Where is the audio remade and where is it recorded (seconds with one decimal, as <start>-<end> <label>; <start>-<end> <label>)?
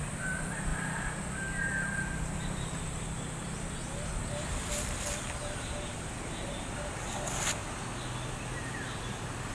0.0-9.5 recorded